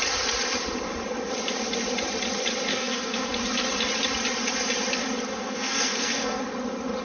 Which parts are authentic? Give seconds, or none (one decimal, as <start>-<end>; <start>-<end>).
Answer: 0.0-2.7; 3.3-5.3; 6.4-7.0